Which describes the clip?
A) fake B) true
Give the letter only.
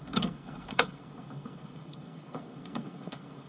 A